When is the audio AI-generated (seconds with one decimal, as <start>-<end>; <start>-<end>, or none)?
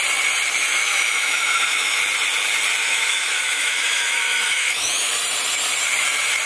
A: 0.7-2.0; 2.8-5.1